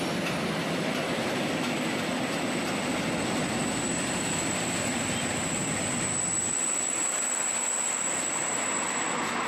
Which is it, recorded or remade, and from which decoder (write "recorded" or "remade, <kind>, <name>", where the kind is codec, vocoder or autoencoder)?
recorded